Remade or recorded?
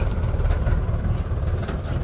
remade